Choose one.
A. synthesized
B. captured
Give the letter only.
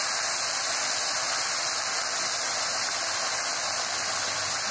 B